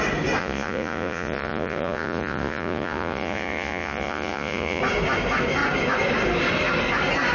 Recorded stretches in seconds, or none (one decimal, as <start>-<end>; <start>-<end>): 0.0-0.4; 4.8-7.3